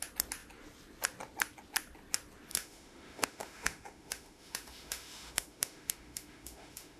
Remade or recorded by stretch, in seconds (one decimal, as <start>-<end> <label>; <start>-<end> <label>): 0.0-2.5 recorded; 2.5-7.0 remade